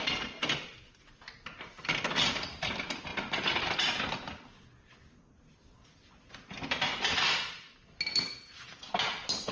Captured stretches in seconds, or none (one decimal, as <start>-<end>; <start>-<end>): 0.0-9.5